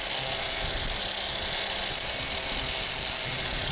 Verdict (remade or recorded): recorded